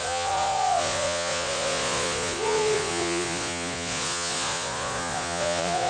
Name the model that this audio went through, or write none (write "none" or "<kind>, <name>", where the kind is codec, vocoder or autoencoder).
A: vocoder, Vocos